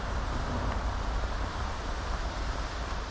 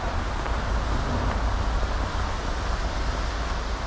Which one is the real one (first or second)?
second